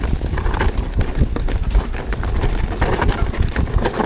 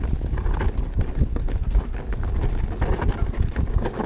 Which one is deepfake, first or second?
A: first